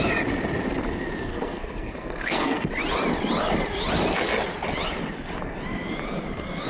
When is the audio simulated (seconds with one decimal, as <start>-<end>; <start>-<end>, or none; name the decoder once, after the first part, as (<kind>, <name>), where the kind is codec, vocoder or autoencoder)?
1.3-2.7 (codec, SNAC)